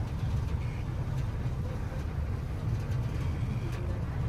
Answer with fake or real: real